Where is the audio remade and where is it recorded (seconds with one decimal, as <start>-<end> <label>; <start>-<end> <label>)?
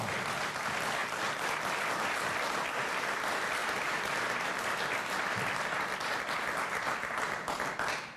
0.0-1.0 recorded; 1.0-2.1 remade; 2.1-3.6 recorded; 3.6-4.2 remade; 4.2-8.2 recorded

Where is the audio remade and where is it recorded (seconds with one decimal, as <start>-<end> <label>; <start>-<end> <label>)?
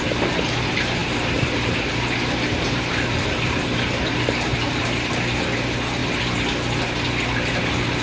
0.0-6.0 remade; 6.0-8.0 recorded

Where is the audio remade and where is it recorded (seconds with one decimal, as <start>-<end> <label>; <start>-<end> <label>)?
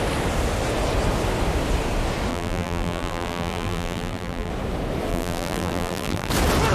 0.0-2.3 recorded; 2.3-4.5 remade; 4.5-5.1 recorded; 5.1-6.3 remade; 6.3-6.7 recorded